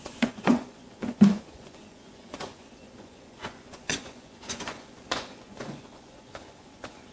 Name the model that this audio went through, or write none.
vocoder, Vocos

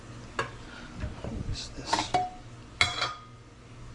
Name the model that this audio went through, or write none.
none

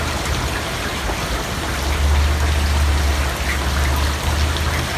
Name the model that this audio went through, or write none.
none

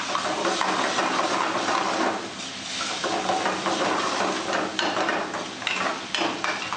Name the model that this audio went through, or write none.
none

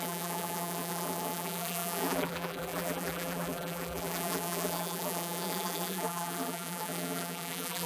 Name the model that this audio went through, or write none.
vocoder, BigVGAN v2